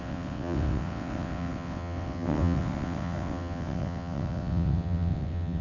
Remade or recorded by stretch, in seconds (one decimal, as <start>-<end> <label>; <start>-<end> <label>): 0.0-5.6 remade